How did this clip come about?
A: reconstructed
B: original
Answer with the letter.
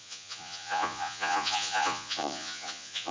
A